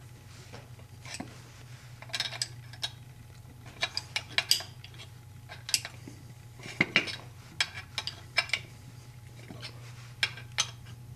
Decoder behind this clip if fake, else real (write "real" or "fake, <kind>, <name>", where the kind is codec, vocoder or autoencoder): real